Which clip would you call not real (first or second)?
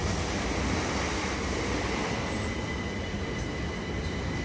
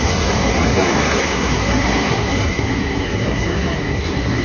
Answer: second